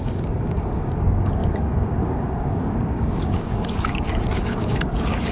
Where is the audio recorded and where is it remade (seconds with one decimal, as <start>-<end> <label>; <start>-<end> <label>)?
0.0-5.3 remade